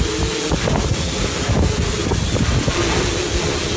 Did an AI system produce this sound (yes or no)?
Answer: no